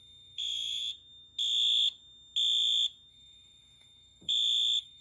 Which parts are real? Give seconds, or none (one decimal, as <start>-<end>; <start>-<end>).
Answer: 0.8-3.1